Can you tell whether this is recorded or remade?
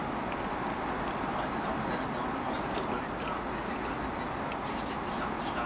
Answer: recorded